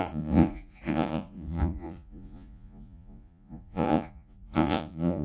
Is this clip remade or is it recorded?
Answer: remade